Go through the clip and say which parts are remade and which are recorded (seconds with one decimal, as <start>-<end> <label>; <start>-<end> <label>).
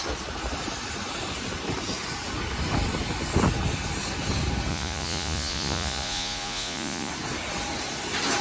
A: 0.0-4.7 recorded; 4.7-7.1 remade; 7.1-8.4 recorded